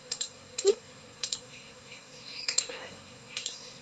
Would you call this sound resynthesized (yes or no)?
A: yes